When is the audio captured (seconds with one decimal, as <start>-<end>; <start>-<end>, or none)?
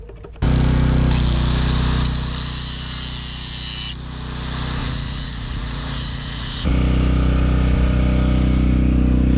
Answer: 0.0-4.8; 6.7-9.4